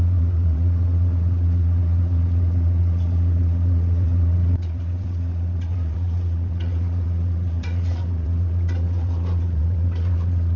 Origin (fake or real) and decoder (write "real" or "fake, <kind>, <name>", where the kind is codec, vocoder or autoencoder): fake, vocoder, WaveNeXt